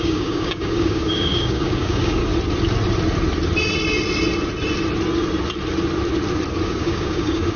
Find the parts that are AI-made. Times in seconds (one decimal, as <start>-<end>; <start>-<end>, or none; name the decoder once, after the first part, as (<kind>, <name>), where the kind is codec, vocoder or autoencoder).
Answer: 0.0-2.2 (codec, DAC); 6.6-7.6